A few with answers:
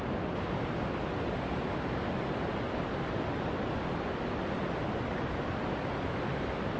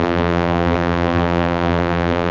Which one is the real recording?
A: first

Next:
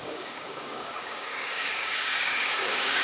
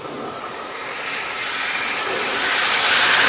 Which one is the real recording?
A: second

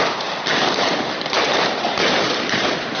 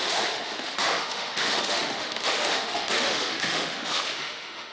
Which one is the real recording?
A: first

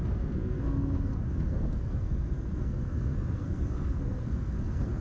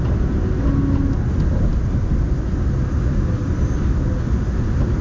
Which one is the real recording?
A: second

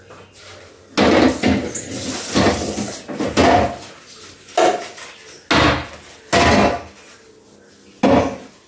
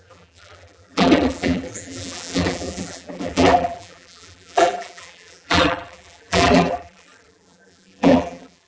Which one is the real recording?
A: first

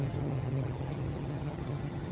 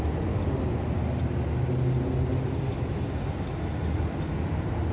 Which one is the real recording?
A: second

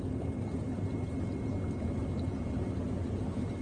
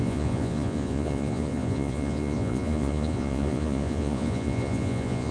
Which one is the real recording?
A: first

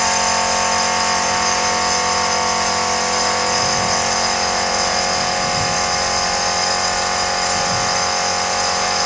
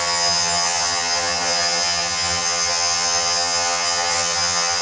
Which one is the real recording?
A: first